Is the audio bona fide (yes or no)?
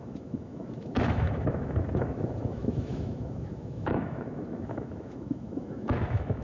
no